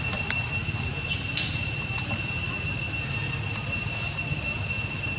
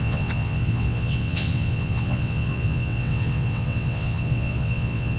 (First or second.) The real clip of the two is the first